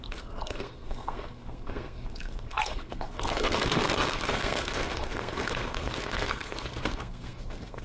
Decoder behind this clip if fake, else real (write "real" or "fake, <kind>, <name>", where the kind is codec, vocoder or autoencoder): fake, codec, SNAC